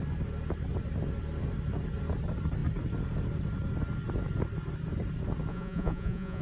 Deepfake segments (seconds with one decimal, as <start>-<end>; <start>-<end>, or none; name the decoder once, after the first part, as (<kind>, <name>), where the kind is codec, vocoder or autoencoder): 5.5-6.4 (vocoder, Vocos)